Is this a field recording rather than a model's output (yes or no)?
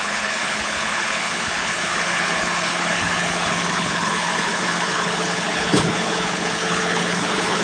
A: no